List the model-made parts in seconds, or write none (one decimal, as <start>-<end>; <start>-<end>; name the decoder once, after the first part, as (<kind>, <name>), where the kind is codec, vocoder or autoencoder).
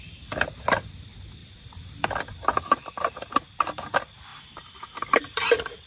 0.0-4.3 (vocoder, BigVGAN v2); 5.2-5.9